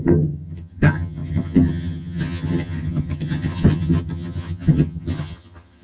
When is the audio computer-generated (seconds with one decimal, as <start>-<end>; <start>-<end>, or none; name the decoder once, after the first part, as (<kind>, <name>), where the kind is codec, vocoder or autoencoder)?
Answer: 0.0-5.8 (vocoder, HiFi-GAN)